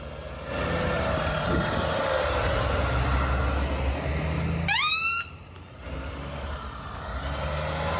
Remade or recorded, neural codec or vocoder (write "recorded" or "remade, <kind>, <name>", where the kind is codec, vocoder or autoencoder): recorded